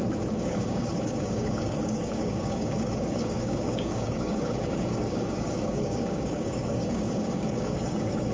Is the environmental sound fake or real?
fake